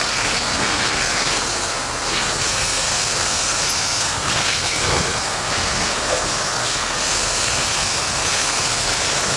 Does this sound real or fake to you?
fake